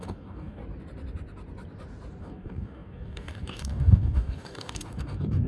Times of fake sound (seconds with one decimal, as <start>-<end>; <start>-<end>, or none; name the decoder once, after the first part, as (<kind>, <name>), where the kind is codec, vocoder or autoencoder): 0.0-0.6 (codec, DAC); 2.2-5.5